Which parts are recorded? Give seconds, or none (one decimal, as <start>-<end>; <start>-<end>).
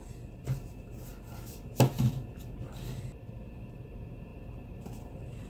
1.1-3.4